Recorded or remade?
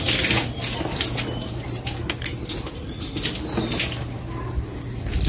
recorded